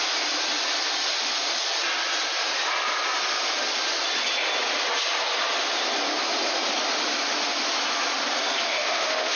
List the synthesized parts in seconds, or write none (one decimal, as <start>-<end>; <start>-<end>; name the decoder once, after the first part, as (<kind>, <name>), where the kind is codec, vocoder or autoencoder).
8.7-9.4 (autoencoder, DAC-VAE)